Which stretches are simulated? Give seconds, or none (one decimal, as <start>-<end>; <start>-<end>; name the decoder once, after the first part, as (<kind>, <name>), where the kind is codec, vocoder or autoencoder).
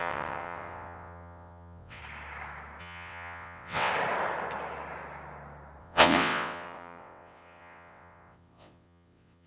0.0-2.0 (vocoder, WaveNeXt); 2.8-3.9; 5.8-9.5